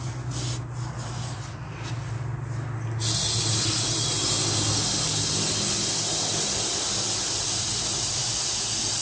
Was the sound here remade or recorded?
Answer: recorded